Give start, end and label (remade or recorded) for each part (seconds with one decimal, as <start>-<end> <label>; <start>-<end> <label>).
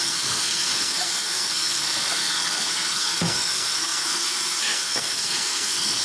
0.0-6.0 remade